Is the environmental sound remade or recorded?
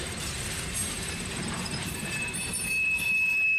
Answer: remade